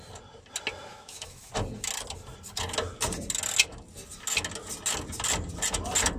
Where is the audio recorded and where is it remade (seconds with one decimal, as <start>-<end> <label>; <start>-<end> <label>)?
0.0-0.9 recorded; 0.9-1.5 remade; 1.5-6.2 recorded